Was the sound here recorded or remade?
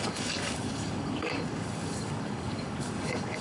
remade